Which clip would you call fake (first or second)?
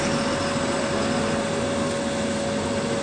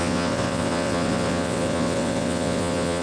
second